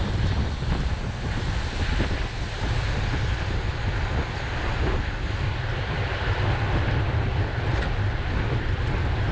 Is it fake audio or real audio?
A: fake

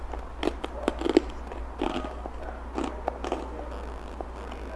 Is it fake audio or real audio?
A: real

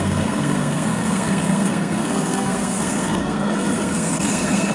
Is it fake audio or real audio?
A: fake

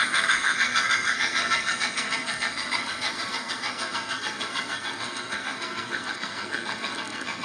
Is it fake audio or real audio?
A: fake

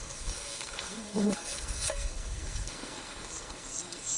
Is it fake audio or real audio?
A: fake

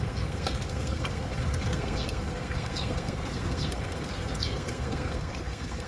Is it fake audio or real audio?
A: fake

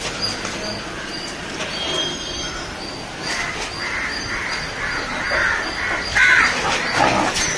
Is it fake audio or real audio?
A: real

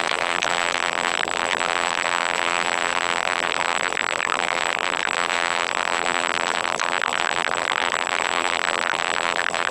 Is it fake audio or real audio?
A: fake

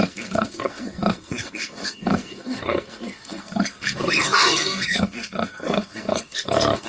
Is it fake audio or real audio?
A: fake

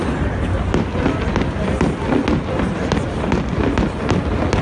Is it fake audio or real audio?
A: real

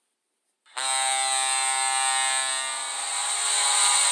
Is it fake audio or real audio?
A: real